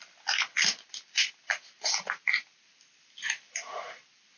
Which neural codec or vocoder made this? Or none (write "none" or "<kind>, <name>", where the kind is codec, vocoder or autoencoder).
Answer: none